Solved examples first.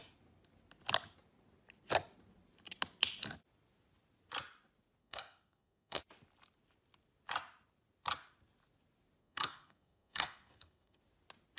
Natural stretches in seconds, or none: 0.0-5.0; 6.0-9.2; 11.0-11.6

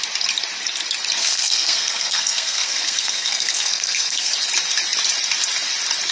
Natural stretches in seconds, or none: 0.0-1.2; 4.3-6.1